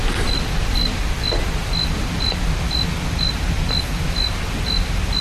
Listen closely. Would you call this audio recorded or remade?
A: recorded